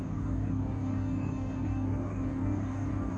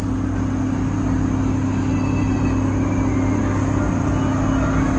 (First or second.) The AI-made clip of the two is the first